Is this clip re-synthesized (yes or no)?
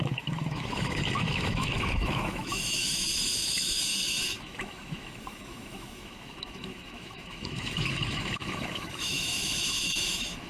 yes